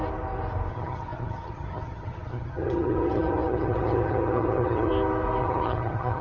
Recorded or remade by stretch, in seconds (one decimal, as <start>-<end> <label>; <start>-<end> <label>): 0.0-0.7 recorded; 0.7-4.9 remade; 4.9-5.4 recorded; 5.4-6.2 remade